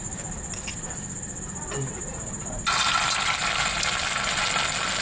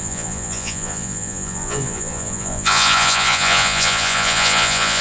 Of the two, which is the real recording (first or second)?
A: first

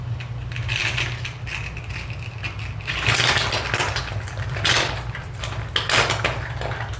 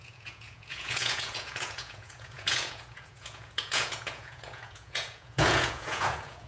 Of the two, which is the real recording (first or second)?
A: first